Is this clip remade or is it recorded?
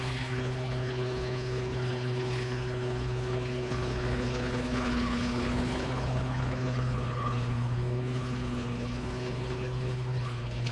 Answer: remade